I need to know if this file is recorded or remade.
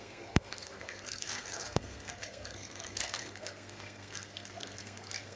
remade